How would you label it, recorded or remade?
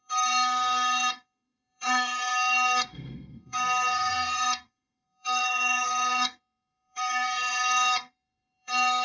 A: remade